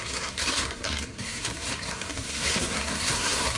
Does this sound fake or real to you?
fake